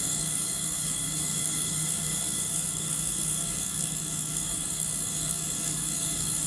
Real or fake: fake